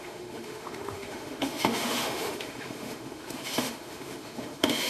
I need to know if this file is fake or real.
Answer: fake